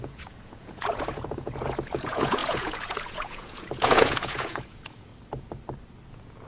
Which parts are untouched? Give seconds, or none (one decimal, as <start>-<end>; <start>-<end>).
5.1-6.1

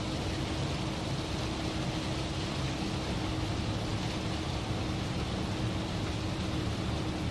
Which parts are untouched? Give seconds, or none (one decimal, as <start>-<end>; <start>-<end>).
0.0-7.3